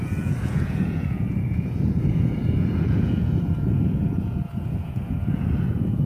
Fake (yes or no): yes